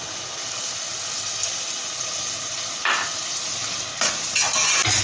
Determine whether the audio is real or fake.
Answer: real